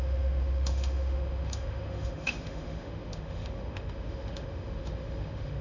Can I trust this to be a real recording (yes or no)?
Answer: no